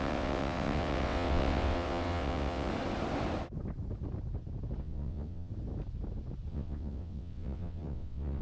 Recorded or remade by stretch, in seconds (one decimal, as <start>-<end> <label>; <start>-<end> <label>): 0.0-2.7 remade; 2.7-4.8 recorded; 4.8-5.5 remade; 5.5-6.5 recorded; 6.5-8.4 remade